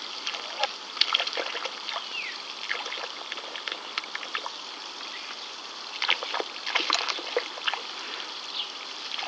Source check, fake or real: real